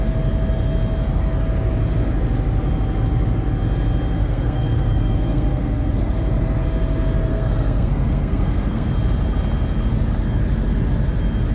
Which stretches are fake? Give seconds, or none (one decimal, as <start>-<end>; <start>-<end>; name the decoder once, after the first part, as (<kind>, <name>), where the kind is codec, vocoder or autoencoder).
4.2-6.1 (codec, SNAC); 7.3-8.9